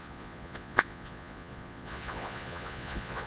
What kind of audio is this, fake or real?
fake